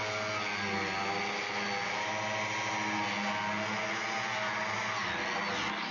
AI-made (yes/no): no